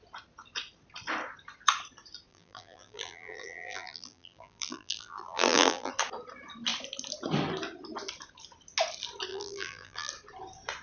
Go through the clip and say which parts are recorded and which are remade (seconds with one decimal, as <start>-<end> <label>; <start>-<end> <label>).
0.0-2.3 recorded; 2.3-5.9 remade; 5.9-9.3 recorded; 9.3-10.1 remade; 10.1-10.8 recorded